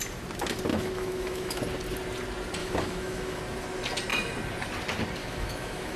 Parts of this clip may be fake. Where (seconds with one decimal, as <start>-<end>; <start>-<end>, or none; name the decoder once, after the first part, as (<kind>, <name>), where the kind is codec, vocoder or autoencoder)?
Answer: 0.7-1.6 (autoencoder, DAC-VAE); 2.6-3.4; 5.2-6.0

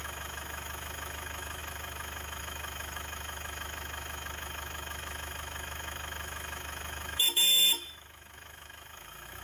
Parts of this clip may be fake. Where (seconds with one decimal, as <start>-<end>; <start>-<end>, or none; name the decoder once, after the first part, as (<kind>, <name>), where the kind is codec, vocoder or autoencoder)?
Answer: 0.0-9.4 (autoencoder, DAC-VAE)

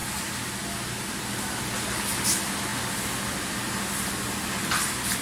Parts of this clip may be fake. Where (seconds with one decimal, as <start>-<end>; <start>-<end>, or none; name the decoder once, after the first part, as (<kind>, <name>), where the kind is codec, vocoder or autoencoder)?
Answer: none

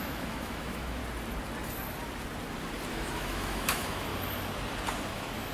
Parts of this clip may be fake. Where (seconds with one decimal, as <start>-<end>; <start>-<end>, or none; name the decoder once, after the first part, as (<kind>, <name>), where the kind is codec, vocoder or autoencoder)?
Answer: 0.0-1.0 (autoencoder, DAC-VAE); 2.9-4.1; 5.1-5.5

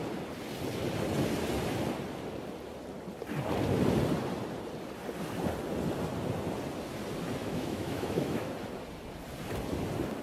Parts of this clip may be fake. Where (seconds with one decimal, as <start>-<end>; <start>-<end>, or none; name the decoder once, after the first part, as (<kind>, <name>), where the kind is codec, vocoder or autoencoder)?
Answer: 7.4-8.5 (autoencoder, DAC-VAE)

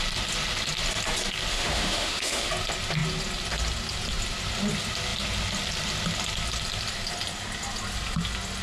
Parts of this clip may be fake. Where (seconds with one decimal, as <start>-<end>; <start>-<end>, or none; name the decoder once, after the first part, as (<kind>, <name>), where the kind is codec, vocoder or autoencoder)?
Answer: 1.5-2.5 (autoencoder, DAC-VAE)

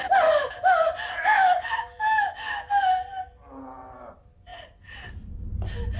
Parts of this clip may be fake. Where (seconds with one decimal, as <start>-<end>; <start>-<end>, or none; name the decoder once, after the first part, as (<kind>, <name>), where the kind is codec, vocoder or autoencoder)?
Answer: 1.2-2.9 (autoencoder, DAC-VAE)